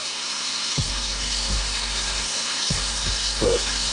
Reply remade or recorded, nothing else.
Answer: remade